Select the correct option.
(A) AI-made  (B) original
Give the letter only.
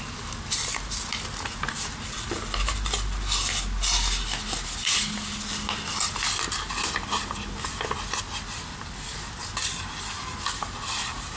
A